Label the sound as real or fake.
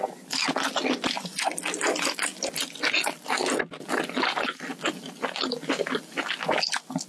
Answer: real